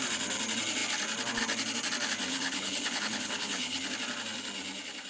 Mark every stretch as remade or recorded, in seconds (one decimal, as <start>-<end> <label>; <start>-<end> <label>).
0.0-2.3 recorded; 2.3-3.8 remade; 3.8-5.1 recorded